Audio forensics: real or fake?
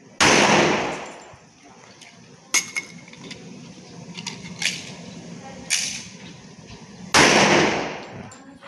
real